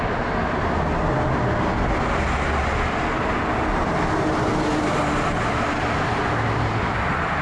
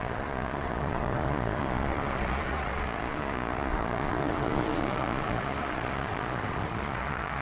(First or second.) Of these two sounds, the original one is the first